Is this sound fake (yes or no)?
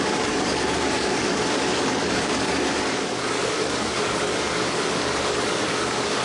yes